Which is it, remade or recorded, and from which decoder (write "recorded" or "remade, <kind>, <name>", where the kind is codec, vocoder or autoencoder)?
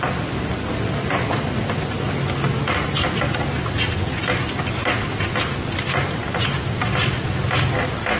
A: recorded